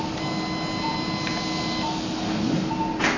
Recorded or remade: recorded